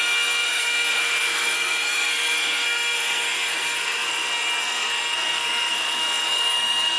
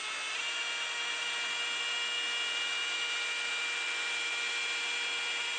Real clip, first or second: second